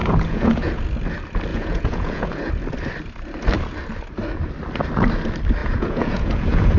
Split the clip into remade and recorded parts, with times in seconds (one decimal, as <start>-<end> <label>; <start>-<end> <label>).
0.0-0.8 remade; 0.8-1.5 recorded; 1.5-2.5 remade; 2.5-5.6 recorded; 5.6-6.8 remade